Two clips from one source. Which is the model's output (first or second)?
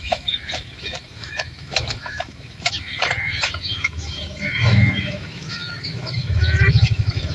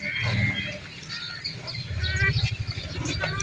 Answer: first